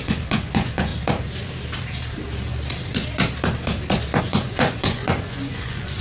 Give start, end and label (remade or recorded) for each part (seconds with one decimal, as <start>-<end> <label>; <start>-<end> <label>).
0.0-0.9 remade; 0.9-4.2 recorded; 4.2-6.0 remade

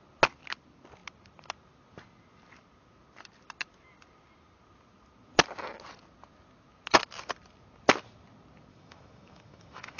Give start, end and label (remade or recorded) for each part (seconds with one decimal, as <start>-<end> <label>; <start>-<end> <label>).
0.0-8.7 recorded; 8.7-10.0 remade

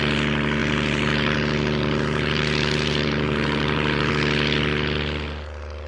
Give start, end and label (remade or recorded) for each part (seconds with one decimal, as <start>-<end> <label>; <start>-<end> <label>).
0.0-0.6 recorded; 0.6-4.1 remade; 4.1-5.9 recorded

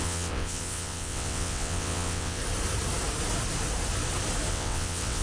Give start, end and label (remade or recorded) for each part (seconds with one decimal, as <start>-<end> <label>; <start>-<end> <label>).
0.0-2.4 remade; 2.4-4.5 recorded; 4.5-5.2 remade